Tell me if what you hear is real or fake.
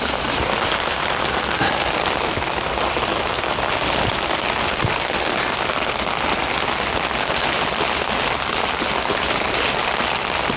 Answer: real